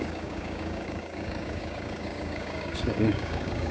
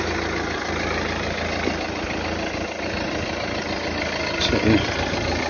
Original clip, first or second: second